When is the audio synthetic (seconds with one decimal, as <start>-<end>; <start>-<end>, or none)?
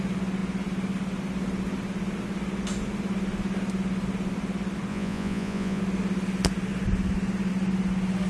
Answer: 4.9-5.8